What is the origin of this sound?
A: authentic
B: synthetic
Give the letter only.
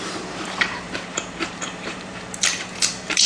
B